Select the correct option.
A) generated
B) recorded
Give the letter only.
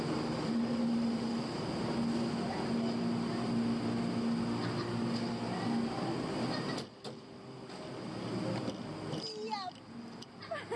B